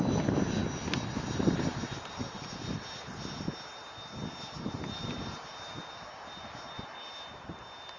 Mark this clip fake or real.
real